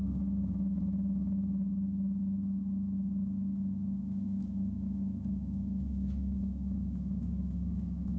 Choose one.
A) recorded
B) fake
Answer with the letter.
B